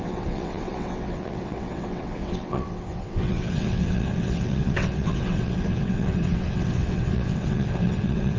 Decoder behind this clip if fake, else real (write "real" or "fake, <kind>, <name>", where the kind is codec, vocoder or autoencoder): fake, vocoder, WaveNeXt